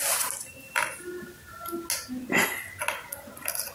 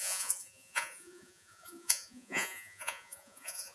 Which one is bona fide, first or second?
first